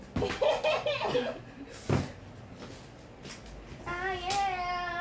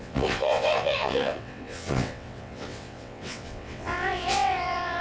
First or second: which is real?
first